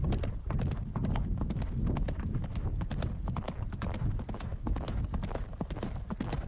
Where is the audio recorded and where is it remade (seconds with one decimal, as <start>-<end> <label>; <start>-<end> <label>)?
0.0-6.5 recorded